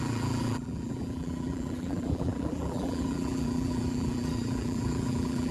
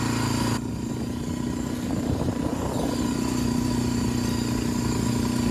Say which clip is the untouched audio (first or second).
second